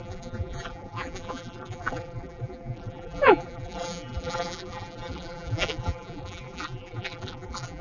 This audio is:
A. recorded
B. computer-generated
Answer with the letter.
B